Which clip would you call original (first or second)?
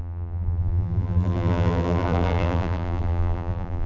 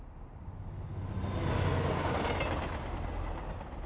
second